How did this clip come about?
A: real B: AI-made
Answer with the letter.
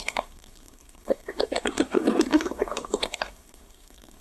B